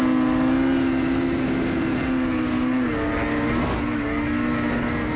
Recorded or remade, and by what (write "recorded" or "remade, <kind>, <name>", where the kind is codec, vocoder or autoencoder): recorded